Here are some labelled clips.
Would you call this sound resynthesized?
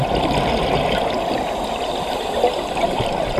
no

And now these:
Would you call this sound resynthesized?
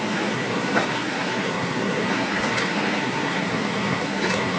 yes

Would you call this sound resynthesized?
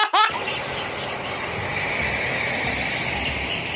no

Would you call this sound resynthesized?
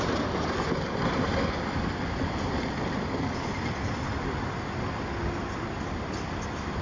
no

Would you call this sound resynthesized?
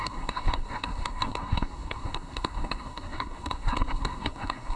yes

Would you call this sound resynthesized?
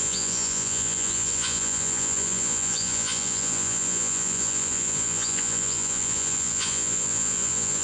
yes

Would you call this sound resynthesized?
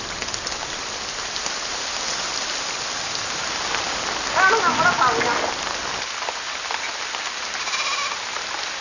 no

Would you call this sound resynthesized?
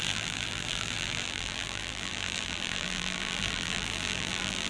yes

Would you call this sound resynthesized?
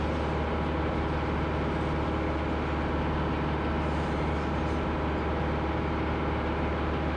no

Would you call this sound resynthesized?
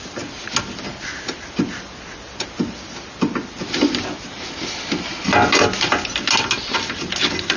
no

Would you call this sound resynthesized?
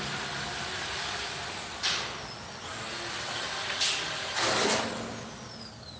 no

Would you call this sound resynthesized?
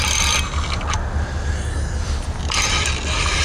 no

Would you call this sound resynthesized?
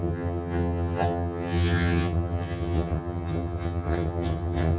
yes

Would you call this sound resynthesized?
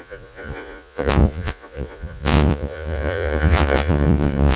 yes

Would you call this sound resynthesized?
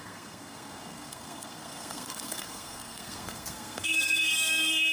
yes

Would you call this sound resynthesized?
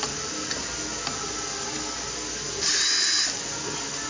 no